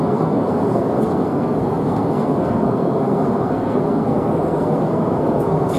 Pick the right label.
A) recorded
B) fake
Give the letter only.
B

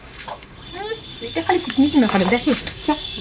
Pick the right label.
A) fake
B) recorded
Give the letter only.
A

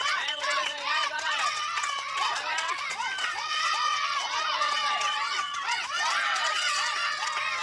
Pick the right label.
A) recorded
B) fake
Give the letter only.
B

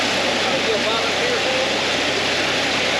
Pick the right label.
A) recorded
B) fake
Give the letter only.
A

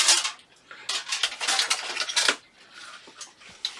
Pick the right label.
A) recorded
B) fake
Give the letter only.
A